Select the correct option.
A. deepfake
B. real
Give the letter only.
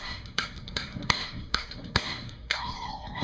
A